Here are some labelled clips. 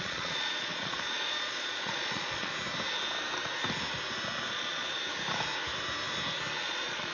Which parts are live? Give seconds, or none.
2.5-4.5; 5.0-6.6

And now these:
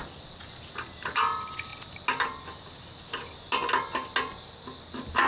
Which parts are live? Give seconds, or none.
0.5-5.3

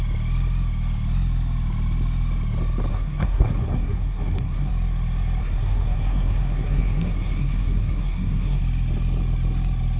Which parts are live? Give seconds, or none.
0.0-2.9; 4.7-5.4; 8.6-10.0

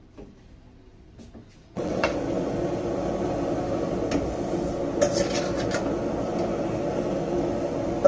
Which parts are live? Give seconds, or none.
0.0-1.6; 2.1-8.1

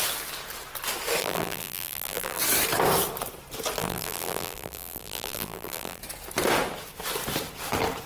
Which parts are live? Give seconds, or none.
0.0-1.2; 2.4-3.8; 6.0-8.1

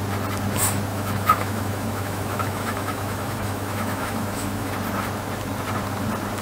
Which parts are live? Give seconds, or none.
0.0-0.9; 4.7-6.4

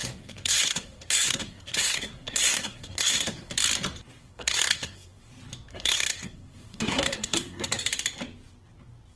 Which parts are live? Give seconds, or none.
3.5-4.2; 5.3-5.7; 7.8-9.2

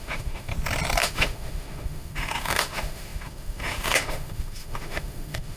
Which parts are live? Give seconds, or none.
0.5-1.0